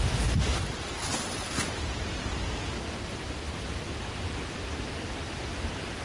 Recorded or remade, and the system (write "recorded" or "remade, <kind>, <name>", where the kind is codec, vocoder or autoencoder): recorded